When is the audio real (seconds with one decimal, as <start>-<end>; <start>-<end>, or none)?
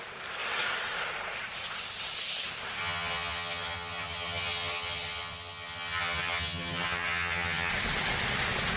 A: 0.0-2.8; 7.7-8.8